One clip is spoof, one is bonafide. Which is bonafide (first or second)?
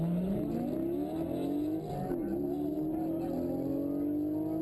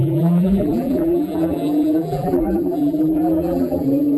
first